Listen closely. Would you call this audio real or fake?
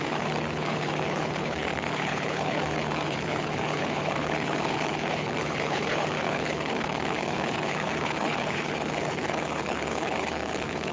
fake